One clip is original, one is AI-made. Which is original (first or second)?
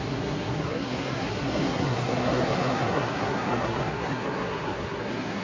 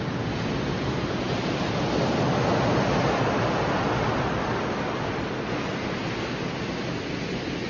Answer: second